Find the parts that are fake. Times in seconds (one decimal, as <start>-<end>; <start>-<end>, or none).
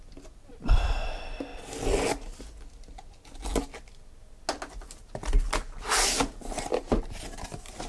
none